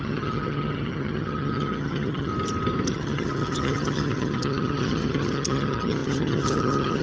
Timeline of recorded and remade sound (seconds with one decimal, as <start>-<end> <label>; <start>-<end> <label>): 0.0-2.3 remade; 2.3-2.9 recorded; 2.9-7.0 remade